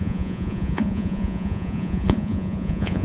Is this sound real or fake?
fake